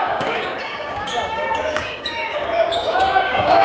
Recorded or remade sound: remade